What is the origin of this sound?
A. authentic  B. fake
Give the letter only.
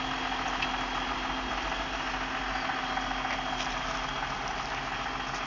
A